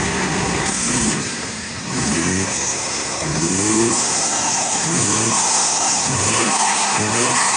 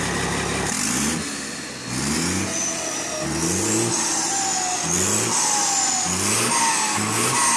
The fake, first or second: first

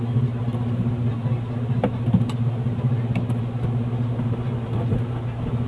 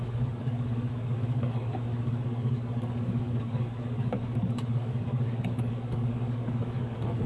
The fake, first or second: second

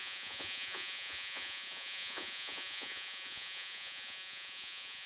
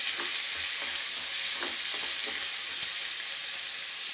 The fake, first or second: first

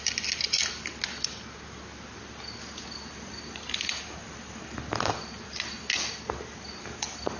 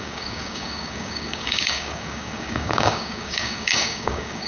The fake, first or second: second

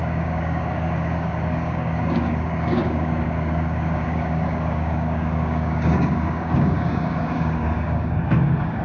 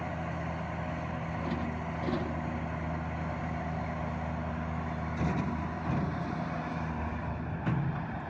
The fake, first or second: first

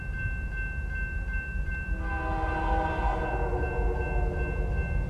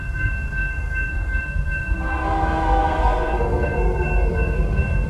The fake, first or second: second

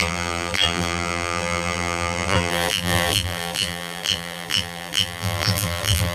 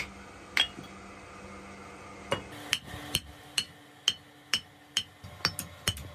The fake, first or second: first